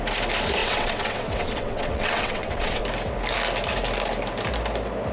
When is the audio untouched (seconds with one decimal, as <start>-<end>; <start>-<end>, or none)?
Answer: 0.0-0.6; 2.8-5.1